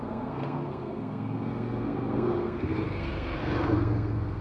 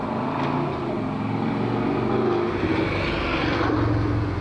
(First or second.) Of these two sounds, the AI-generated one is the first